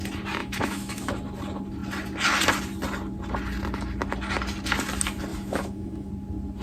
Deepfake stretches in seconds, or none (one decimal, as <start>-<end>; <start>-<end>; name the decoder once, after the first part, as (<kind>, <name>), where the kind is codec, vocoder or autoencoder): 0.4-1.1 (autoencoder, DAC-VAE); 5.3-6.1